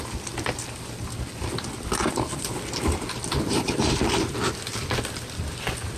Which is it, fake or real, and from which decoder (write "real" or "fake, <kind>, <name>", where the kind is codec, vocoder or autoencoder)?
real